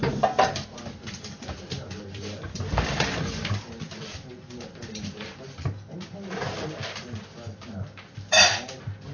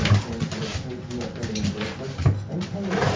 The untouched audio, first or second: second